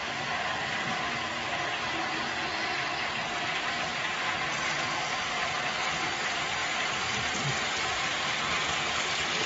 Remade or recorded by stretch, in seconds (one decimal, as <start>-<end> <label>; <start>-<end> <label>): 0.0-9.5 recorded